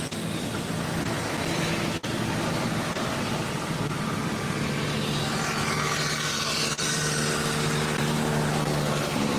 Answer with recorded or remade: recorded